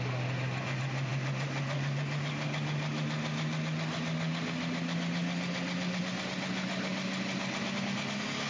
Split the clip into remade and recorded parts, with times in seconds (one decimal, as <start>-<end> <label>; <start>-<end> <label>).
0.0-8.5 recorded